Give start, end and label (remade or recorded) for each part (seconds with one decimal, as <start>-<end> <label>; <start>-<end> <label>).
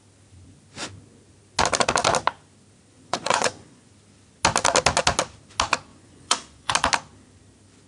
0.0-2.9 recorded; 2.9-3.9 remade; 3.9-5.9 recorded; 5.9-6.7 remade; 6.7-7.9 recorded